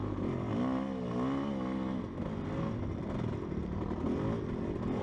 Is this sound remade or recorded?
recorded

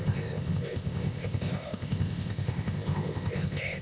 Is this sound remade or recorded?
remade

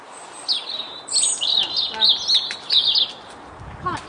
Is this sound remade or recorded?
recorded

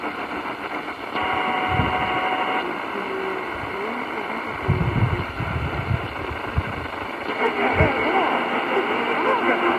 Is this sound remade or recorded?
remade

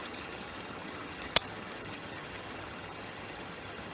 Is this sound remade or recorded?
remade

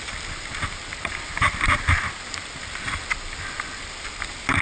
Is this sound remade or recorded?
recorded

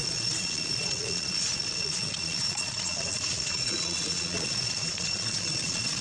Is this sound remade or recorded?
remade